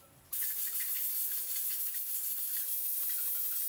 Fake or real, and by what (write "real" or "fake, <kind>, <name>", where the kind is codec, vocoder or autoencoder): fake, vocoder, BigVGAN v2